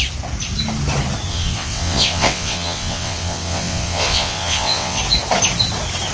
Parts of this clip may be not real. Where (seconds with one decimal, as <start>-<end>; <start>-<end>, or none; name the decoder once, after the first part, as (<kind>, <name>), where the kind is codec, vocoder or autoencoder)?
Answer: 1.3-5.0 (vocoder, WaveNeXt)